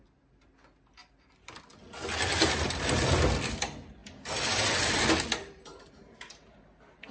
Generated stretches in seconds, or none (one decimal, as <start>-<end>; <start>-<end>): none